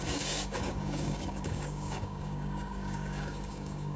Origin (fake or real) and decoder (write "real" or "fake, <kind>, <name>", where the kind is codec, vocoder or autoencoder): fake, codec, DAC